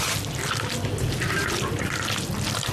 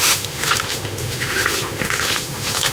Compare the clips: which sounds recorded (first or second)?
first